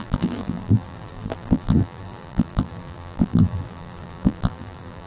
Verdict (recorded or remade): remade